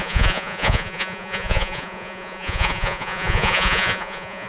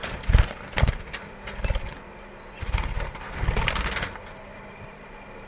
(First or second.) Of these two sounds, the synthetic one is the first